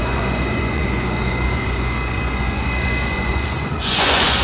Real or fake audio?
fake